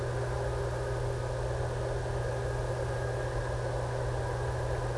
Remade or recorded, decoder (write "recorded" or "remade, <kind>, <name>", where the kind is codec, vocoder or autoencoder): recorded